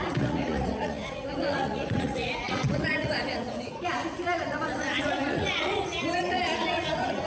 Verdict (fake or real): fake